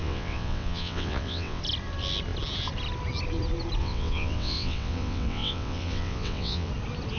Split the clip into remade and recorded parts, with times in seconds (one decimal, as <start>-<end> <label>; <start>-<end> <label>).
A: 0.0-1.6 remade; 1.6-3.8 recorded; 3.8-6.7 remade; 6.7-7.2 recorded